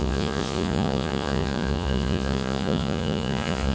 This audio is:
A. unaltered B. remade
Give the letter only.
B